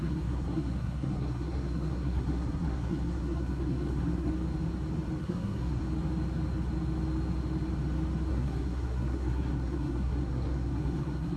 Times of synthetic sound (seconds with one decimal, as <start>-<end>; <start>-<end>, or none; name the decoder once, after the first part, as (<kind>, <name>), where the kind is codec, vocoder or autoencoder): 0.0-4.3 (codec, SNAC); 5.2-5.8; 8.3-11.4